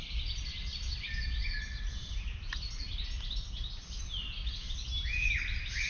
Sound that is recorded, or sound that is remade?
recorded